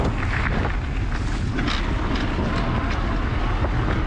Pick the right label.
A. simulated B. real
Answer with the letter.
B